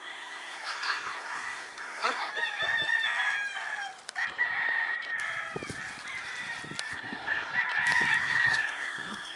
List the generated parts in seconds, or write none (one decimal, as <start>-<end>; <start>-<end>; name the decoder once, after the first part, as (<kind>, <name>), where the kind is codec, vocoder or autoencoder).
0.0-2.3 (codec, SNAC); 6.9-7.5; 8.2-9.4